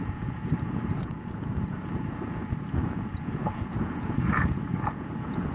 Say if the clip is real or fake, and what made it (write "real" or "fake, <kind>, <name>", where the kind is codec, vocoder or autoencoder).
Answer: fake, vocoder, Vocos